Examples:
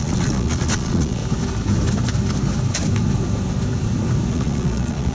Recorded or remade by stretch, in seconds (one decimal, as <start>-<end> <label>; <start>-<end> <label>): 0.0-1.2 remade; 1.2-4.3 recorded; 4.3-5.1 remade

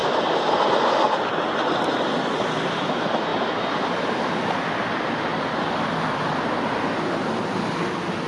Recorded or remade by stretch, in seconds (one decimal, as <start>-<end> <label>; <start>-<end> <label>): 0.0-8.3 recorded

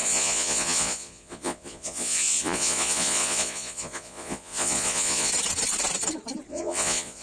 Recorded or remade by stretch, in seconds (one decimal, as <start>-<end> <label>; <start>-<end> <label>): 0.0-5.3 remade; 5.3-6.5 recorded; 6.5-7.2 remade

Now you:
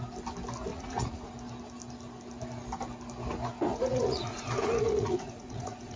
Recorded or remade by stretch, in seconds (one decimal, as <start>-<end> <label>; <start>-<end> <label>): 0.0-0.7 recorded; 0.7-1.3 remade; 1.3-3.7 recorded; 3.7-6.0 remade

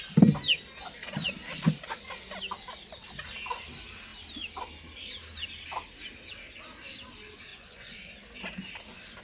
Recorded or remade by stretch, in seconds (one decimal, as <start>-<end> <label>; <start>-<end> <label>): 0.0-7.5 recorded; 7.5-8.1 remade; 8.1-9.2 recorded

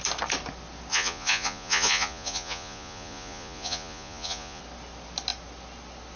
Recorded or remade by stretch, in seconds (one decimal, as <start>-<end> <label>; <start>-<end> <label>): 0.0-0.9 recorded; 0.9-4.6 remade; 4.6-6.2 recorded

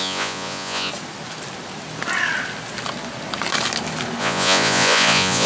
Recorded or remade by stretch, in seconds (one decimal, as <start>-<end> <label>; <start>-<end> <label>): 0.0-0.9 remade; 0.9-4.2 recorded; 4.2-5.5 remade

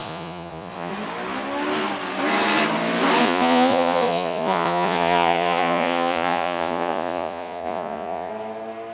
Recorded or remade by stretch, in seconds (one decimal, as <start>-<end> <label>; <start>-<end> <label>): 0.0-0.9 remade; 0.9-3.2 recorded; 3.2-8.3 remade; 8.3-8.9 recorded